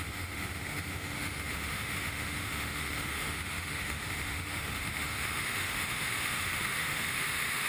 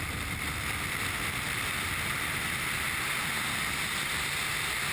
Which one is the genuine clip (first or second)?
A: second